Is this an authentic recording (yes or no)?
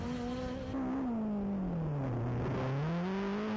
yes